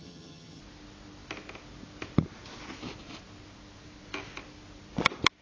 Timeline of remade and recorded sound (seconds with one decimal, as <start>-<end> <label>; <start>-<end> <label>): 0.0-0.6 remade; 0.6-5.4 recorded